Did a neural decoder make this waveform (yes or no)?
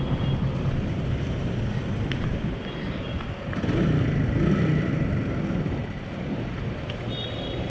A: no